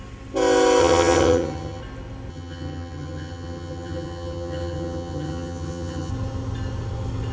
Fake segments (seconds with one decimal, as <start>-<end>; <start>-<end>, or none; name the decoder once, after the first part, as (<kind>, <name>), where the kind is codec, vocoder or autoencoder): 0.8-1.8 (vocoder, HiFi-GAN); 2.3-6.1